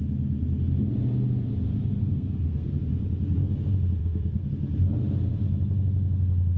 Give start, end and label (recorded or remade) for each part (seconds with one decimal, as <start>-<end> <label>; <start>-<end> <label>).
0.0-2.0 recorded; 2.0-2.8 remade; 2.8-4.0 recorded; 4.0-4.5 remade; 4.5-6.6 recorded